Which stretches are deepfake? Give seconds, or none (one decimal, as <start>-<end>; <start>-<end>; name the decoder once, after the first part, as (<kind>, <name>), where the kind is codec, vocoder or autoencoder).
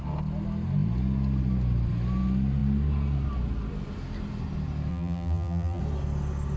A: 4.9-5.8 (vocoder, BigVGAN v2)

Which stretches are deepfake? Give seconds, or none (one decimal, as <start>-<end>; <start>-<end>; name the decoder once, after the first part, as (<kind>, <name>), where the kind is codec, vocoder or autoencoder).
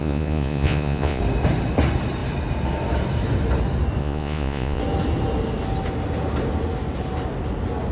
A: 0.0-1.2 (vocoder, Vocos); 4.0-4.8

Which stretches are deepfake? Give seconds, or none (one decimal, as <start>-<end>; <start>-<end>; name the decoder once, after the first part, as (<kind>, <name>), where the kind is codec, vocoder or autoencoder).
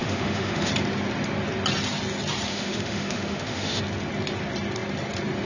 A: 0.0-0.7 (autoencoder, DAC-VAE); 2.5-3.8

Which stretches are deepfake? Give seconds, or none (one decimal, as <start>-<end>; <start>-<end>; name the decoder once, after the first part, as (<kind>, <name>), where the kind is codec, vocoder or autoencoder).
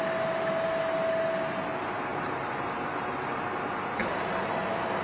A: 2.1-4.0 (vocoder, BigVGAN v2)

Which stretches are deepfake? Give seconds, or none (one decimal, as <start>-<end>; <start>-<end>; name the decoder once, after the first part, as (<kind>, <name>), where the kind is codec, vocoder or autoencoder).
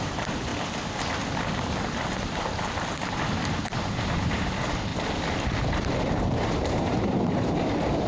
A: 0.0-0.5 (vocoder, BigVGAN v2); 3.1-4.9; 5.6-8.1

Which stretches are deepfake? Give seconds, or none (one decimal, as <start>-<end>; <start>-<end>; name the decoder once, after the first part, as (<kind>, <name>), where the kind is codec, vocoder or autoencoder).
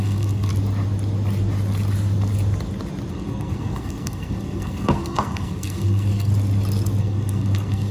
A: 0.0-0.5 (codec, SNAC); 3.1-6.3; 7.0-7.9